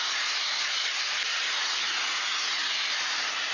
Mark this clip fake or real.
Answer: real